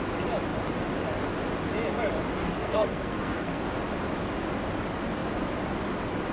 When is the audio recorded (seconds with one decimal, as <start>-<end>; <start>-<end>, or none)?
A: 0.0-2.4; 3.6-6.3